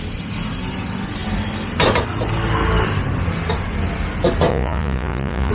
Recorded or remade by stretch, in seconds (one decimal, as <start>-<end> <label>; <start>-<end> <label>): 0.0-4.5 recorded; 4.5-5.5 remade